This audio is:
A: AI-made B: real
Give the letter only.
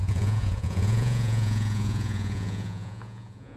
A